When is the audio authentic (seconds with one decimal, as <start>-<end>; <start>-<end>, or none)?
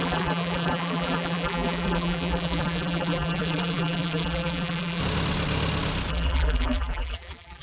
5.0-6.1